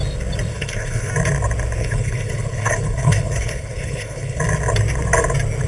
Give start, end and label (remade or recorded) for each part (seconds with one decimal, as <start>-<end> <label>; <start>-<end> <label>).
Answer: 0.0-0.5 recorded; 0.5-1.1 remade; 1.1-1.8 recorded; 1.8-4.4 remade; 4.4-5.7 recorded